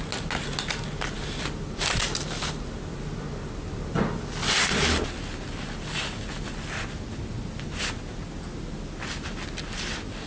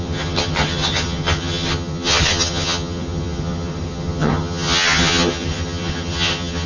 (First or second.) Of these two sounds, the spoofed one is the second